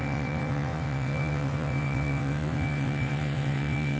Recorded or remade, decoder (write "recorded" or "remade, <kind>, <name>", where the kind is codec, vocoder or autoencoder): remade, vocoder, WaveNeXt